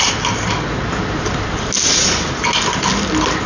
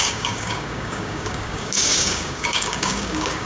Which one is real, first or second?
first